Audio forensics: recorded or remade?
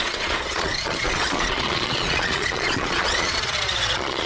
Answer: remade